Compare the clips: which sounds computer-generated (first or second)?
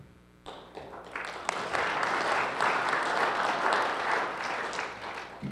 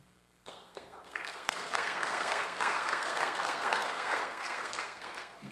second